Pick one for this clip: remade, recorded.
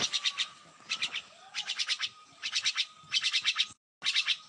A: recorded